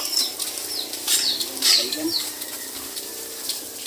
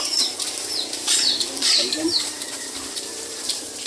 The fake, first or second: second